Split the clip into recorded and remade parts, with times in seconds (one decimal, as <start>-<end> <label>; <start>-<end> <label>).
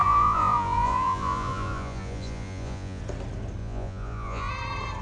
0.0-3.0 remade; 3.0-3.6 recorded; 3.6-4.5 remade; 4.5-5.0 recorded